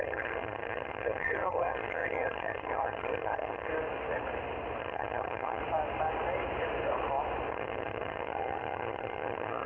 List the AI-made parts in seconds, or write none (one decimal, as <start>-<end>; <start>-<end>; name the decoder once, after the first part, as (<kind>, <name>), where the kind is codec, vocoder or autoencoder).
0.0-3.7 (vocoder, HiFi-GAN); 4.8-5.6; 7.5-9.7